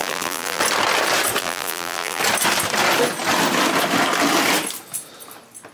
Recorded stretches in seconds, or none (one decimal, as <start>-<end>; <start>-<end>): 0.6-1.4; 2.2-5.7